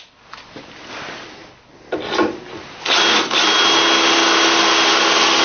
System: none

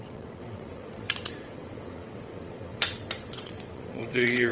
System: vocoder, WaveNeXt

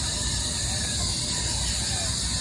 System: none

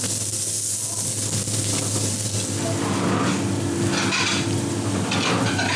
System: none